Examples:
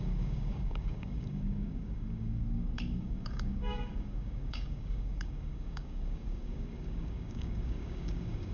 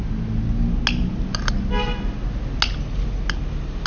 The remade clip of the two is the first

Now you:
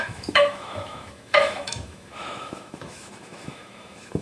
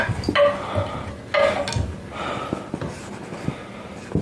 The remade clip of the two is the first